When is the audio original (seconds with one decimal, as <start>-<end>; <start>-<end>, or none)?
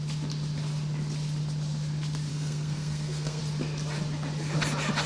0.0-2.3; 3.4-5.1